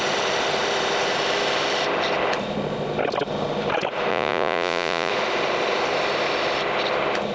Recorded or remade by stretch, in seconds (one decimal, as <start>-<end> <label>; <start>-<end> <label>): 0.0-4.1 recorded; 4.1-5.1 remade; 5.1-7.3 recorded

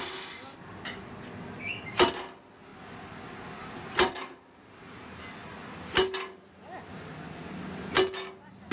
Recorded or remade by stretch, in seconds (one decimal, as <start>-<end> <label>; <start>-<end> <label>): 0.0-8.7 recorded

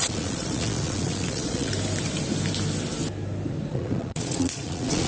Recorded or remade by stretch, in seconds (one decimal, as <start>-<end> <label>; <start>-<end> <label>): 0.0-1.7 remade; 1.7-3.7 recorded; 3.7-5.1 remade

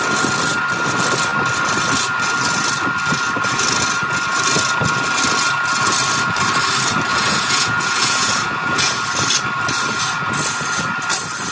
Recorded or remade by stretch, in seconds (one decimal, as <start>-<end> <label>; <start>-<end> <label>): 0.0-7.1 recorded; 7.1-9.0 remade; 9.0-11.5 recorded

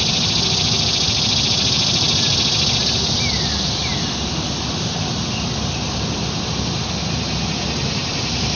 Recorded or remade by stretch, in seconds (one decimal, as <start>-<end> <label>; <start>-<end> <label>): 0.0-8.6 recorded

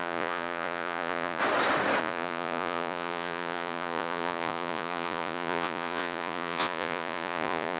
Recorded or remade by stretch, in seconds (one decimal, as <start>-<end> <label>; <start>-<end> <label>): 0.0-1.4 remade; 1.4-2.0 recorded; 2.0-7.8 remade

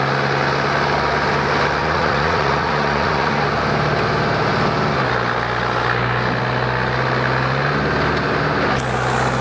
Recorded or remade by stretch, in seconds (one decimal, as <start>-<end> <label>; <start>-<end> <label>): 0.0-1.8 recorded; 1.8-3.4 remade; 3.4-9.4 recorded